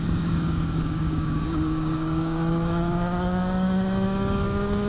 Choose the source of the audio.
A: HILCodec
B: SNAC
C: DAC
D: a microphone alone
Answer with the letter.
C